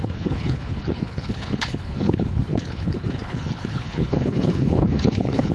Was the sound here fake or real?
fake